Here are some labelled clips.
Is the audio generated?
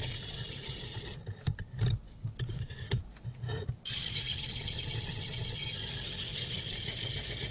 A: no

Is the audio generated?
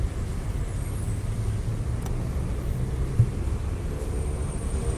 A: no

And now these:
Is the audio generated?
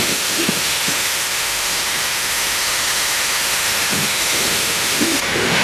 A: yes